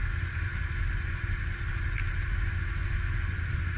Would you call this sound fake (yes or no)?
no